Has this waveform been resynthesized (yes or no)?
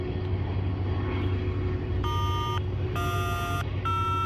no